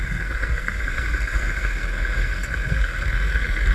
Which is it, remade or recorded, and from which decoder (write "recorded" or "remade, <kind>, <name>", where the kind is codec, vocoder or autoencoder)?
remade, codec, SNAC